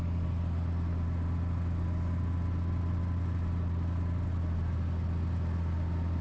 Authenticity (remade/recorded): recorded